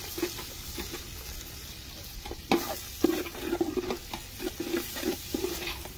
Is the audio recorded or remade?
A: recorded